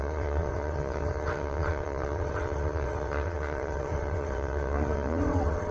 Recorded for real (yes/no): no